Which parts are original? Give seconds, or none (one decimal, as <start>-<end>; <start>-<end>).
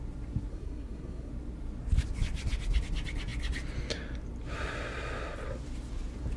0.0-0.5; 1.3-6.4